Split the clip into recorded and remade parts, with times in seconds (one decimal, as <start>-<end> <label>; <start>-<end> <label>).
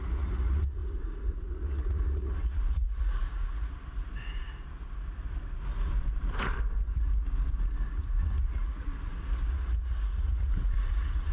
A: 0.0-3.7 remade; 3.7-7.9 recorded; 7.9-8.9 remade; 8.9-9.5 recorded; 9.5-11.3 remade